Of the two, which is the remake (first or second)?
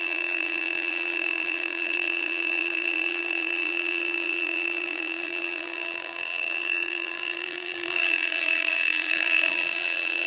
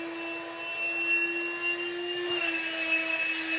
first